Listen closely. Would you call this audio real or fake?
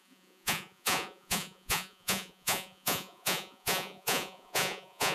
fake